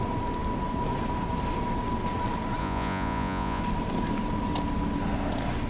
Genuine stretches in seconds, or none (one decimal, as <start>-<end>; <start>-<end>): 0.0-2.6; 3.6-5.7